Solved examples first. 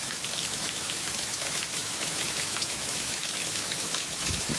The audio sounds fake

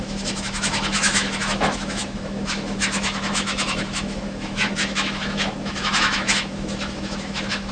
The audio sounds fake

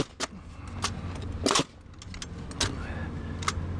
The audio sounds real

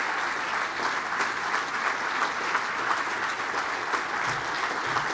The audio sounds real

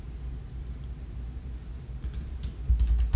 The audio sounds real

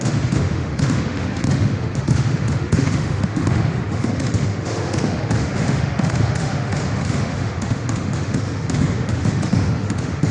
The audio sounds fake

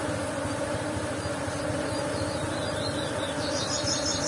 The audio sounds real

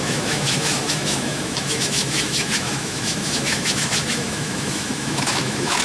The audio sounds fake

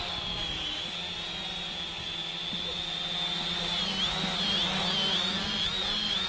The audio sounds real